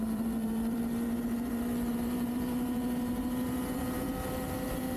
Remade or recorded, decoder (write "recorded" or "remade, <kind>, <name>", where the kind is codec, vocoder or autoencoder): remade, vocoder, BigVGAN v2